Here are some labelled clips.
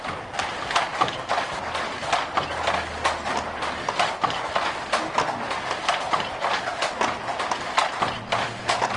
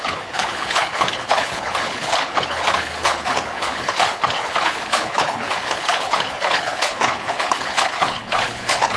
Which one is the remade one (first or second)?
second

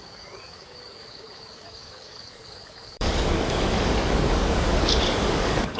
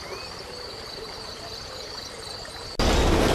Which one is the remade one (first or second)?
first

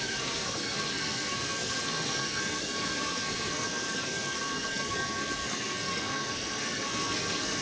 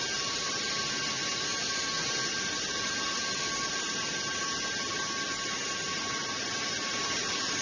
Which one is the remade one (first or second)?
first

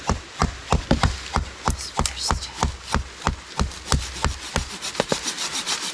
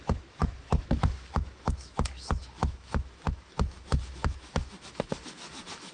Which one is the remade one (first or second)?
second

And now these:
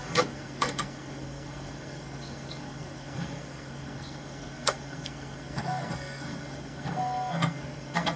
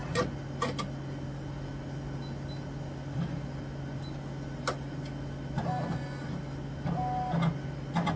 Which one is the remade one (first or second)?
first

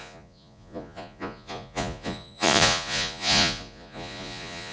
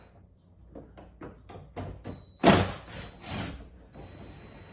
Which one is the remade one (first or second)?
first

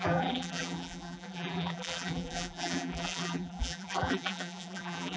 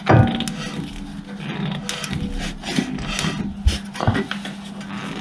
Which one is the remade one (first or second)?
first